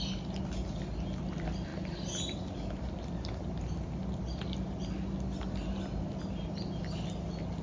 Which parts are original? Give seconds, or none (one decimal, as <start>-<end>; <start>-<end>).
0.0-7.6